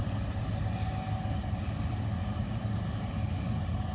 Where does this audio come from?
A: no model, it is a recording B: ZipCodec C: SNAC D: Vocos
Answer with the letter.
A